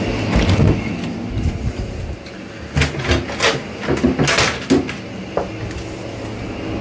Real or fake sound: real